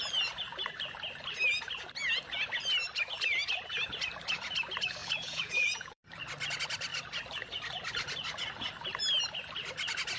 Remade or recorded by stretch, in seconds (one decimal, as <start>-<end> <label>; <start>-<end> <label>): 0.0-5.0 recorded; 5.0-6.0 remade; 6.0-10.2 recorded